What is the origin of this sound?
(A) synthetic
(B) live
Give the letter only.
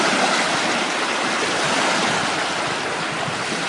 B